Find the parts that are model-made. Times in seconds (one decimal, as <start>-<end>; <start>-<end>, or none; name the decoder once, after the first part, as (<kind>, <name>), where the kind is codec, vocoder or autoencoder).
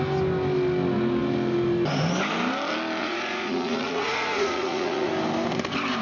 3.0-5.1 (vocoder, Vocos)